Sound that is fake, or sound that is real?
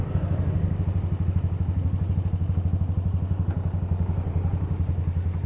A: real